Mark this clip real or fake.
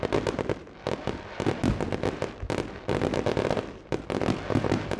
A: fake